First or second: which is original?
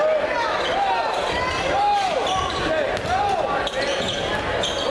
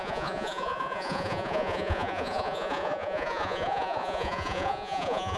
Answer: first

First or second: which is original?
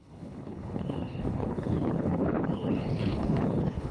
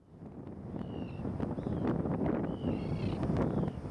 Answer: second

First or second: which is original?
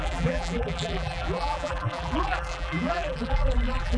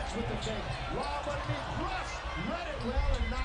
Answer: second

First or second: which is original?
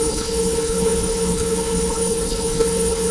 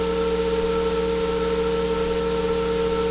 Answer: second